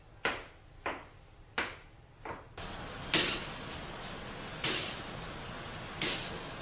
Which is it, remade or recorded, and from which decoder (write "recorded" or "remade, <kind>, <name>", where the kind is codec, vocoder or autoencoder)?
recorded